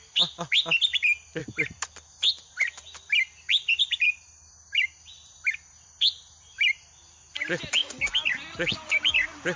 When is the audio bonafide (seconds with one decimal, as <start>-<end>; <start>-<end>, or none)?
0.0-9.6